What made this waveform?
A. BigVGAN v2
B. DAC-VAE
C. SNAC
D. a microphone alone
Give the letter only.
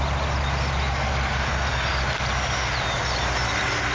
D